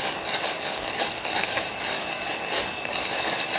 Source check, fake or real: fake